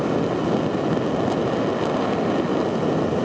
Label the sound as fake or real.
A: real